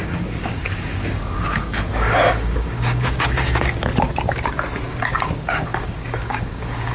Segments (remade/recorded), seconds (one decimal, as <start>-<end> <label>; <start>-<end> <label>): 0.0-3.9 remade; 3.9-4.9 recorded; 4.9-6.9 remade